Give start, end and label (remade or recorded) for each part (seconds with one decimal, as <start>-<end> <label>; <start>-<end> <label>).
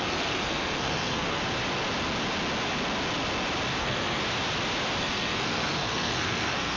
0.0-1.4 remade; 1.4-3.8 recorded; 3.8-4.2 remade; 4.2-5.0 recorded; 5.0-6.8 remade